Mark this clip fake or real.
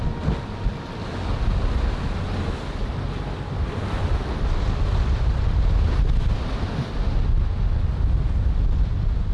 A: real